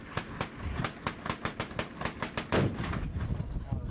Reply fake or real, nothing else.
real